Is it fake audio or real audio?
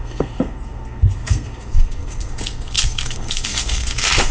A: fake